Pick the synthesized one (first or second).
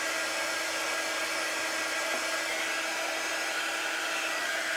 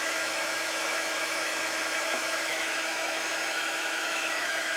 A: second